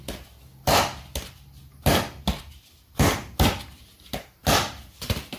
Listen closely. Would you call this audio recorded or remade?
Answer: recorded